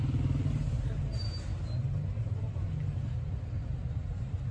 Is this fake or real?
real